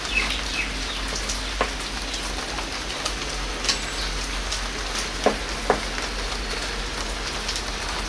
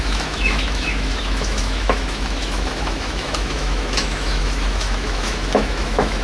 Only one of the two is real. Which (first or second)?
first